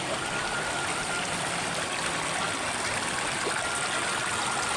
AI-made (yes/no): no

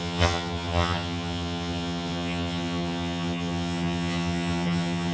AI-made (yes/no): yes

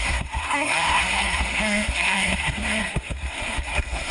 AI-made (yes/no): yes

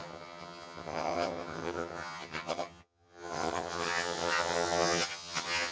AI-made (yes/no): yes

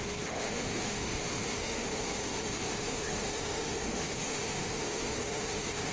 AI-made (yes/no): yes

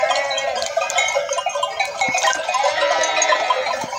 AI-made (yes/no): yes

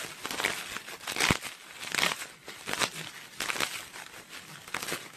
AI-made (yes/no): no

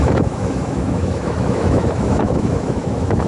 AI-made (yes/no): yes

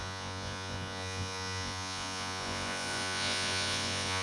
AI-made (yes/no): yes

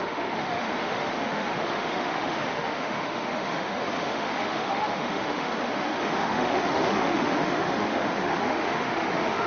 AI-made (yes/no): yes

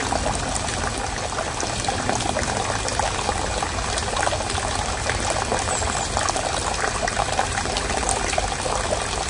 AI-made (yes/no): no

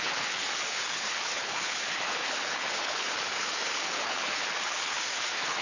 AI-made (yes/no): yes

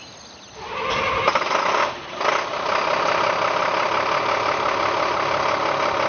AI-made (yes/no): no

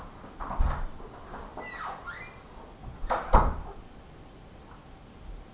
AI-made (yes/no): no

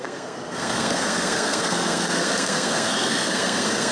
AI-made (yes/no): yes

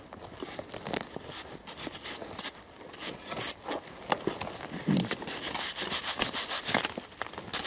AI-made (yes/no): no